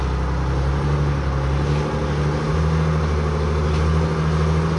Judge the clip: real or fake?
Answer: real